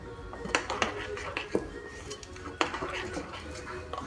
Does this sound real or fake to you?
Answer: fake